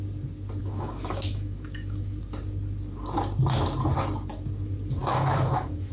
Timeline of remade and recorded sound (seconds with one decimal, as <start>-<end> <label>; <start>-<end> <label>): 0.0-0.6 recorded; 0.6-2.2 remade; 2.2-5.0 recorded; 5.0-5.9 remade